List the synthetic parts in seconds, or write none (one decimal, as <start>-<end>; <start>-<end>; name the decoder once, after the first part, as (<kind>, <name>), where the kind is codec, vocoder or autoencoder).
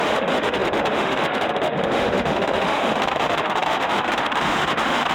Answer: 0.0-5.1 (autoencoder, DAC-VAE)